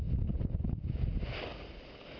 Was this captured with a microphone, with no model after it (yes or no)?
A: yes